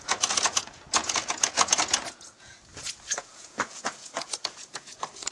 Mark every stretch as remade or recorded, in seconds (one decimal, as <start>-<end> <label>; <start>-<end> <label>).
0.0-5.3 remade